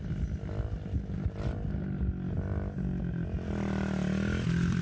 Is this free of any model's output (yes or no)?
yes